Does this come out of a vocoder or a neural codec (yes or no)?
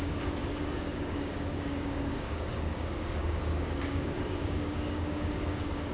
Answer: yes